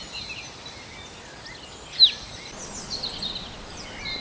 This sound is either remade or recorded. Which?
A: recorded